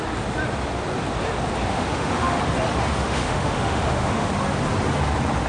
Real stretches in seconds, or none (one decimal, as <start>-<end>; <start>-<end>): 0.0-1.7; 2.4-2.9; 4.3-5.5